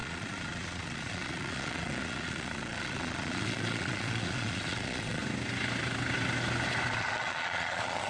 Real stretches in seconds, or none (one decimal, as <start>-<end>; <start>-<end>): 5.2-6.9